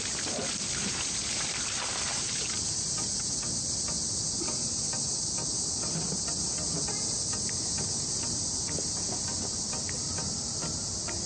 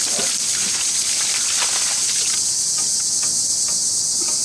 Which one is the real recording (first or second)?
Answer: second